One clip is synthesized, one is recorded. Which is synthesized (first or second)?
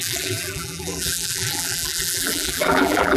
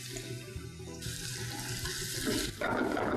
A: first